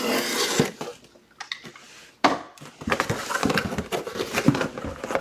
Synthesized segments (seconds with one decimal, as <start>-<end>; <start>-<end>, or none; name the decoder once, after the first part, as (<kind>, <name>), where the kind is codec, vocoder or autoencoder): 0.9-4.0 (vocoder, BigVGAN v2)